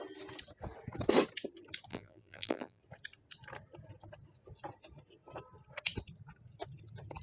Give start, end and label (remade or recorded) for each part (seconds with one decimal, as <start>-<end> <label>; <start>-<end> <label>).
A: 0.0-1.9 recorded; 1.9-2.8 remade; 2.8-7.2 recorded